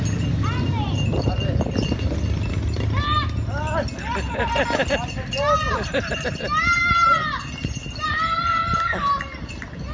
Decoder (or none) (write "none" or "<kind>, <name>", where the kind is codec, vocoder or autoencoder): none